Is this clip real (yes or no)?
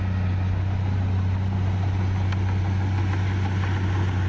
yes